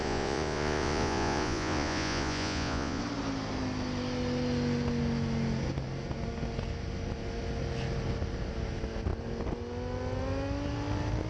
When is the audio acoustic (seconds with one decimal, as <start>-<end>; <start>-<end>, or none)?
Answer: 3.0-11.3